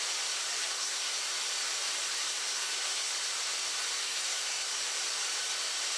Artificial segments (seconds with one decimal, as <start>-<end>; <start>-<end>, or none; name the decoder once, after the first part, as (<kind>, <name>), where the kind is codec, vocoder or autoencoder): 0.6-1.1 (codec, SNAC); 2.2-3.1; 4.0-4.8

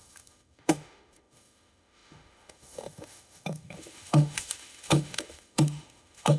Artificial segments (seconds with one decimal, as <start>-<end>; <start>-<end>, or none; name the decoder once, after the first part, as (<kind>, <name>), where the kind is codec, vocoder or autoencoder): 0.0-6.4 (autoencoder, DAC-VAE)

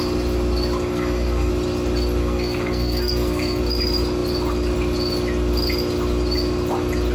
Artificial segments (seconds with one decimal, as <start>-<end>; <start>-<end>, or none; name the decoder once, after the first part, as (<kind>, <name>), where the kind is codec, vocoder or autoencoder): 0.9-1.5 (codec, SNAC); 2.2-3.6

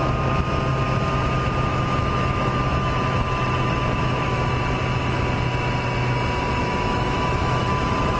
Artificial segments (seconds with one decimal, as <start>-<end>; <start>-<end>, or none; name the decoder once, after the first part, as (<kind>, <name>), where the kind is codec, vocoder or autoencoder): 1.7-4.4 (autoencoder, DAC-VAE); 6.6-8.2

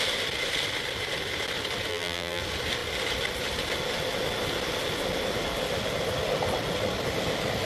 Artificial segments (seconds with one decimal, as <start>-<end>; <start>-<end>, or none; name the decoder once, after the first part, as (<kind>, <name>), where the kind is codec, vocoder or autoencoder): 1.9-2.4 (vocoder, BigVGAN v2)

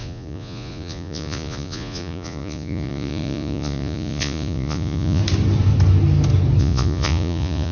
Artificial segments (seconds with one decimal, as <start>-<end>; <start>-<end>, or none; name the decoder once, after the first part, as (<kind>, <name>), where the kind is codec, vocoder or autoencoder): 0.0-5.2 (vocoder, Vocos); 6.6-7.7

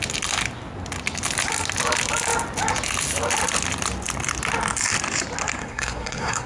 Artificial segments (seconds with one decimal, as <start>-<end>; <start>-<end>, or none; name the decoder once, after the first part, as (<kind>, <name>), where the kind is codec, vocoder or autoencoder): 5.6-6.5 (codec, SNAC)